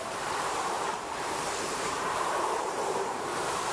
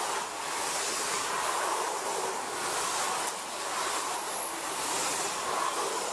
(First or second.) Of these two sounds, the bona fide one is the second